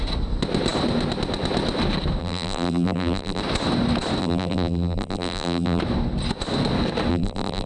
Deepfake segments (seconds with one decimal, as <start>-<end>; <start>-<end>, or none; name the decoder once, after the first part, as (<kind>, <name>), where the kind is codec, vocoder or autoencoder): 2.2-3.4 (vocoder, BigVGAN v2); 4.2-5.8; 7.1-7.7